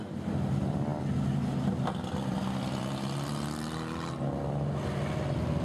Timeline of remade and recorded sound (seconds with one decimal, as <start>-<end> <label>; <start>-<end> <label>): 0.0-5.6 recorded